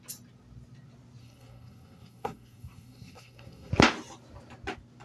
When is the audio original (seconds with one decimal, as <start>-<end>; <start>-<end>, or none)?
0.0-1.2; 3.7-5.0